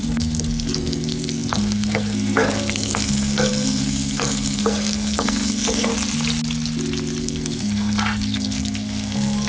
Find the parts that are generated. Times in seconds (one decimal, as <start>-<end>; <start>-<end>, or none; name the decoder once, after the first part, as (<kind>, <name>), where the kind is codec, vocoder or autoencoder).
0.0-5.9 (codec, SNAC); 7.2-9.5